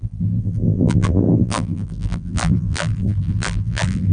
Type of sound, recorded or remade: remade